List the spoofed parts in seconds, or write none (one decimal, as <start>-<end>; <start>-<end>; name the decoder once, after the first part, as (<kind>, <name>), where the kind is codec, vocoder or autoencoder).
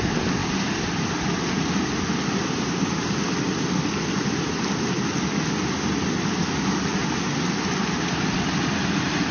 none